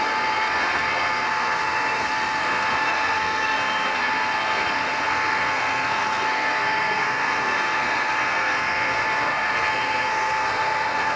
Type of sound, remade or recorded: remade